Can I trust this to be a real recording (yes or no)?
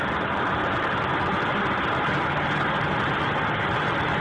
yes